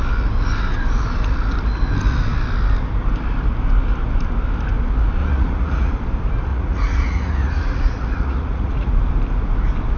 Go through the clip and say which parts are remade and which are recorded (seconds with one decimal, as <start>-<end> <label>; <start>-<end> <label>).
0.0-5.2 recorded; 5.2-5.9 remade; 5.9-6.5 recorded; 6.5-8.9 remade; 8.9-10.0 recorded